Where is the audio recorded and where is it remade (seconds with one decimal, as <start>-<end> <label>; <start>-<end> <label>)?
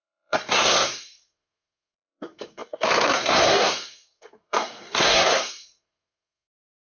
0.0-6.9 remade